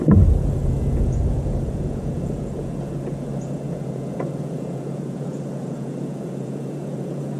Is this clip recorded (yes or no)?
no